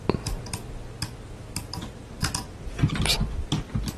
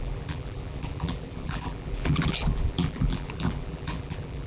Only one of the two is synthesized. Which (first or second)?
second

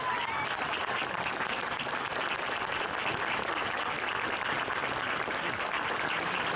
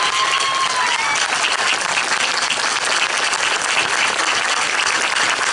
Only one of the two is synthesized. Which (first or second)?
first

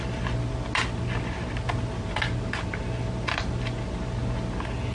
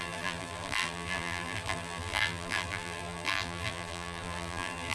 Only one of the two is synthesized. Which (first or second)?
second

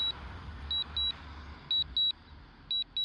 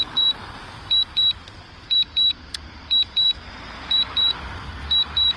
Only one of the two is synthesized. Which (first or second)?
second